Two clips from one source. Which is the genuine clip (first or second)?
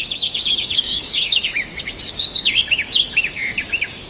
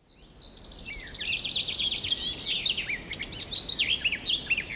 second